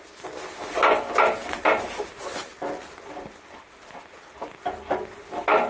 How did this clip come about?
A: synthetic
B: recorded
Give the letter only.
B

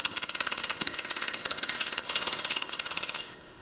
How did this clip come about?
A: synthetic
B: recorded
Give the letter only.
A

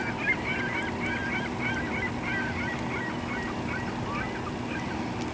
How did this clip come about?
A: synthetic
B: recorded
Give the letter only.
B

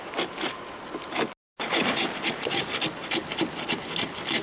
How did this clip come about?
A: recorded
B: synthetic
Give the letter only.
A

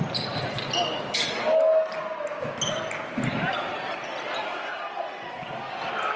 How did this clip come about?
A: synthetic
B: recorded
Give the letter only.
B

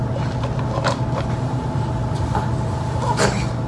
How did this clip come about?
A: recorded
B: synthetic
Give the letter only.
A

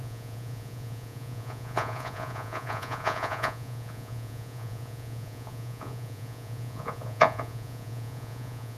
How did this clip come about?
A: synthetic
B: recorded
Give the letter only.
A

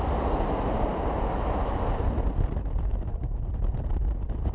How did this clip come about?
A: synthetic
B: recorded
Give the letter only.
B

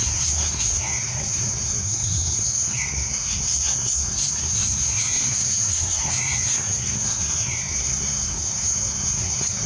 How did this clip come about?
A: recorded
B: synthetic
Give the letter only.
B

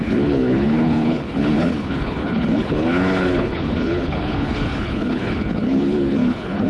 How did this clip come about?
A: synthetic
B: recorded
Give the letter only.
A